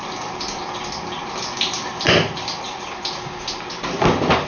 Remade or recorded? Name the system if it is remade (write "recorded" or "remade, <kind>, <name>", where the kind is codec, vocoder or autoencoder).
recorded